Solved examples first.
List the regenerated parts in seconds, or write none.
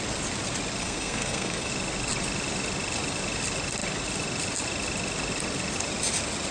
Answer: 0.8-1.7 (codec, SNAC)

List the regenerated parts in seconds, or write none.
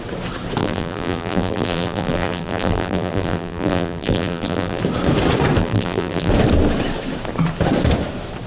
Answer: 0.6-4.8 (vocoder, BigVGAN v2); 5.6-6.3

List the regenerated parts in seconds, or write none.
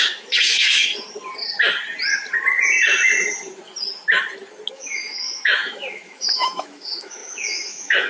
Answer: 0.0-0.9 (autoencoder, DAC-VAE); 4.7-8.1